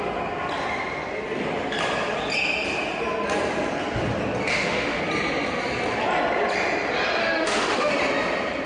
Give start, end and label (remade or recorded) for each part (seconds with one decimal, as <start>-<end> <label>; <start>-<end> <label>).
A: 0.0-4.5 recorded; 4.5-5.0 remade; 5.0-7.2 recorded; 7.2-7.9 remade; 7.9-8.7 recorded